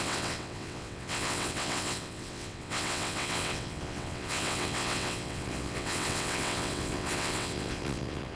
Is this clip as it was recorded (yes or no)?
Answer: no